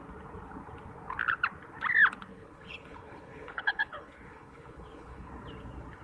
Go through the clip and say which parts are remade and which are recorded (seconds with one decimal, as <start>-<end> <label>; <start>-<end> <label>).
0.0-2.3 recorded; 2.3-5.3 remade; 5.3-6.0 recorded